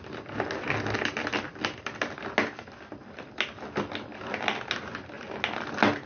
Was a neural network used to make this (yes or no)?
no